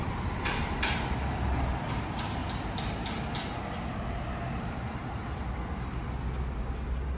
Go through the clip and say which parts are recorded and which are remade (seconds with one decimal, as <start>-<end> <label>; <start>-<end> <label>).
0.0-2.4 remade; 2.4-4.7 recorded; 4.7-5.2 remade; 5.2-6.6 recorded; 6.6-7.2 remade